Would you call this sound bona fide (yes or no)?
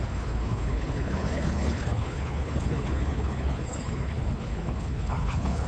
no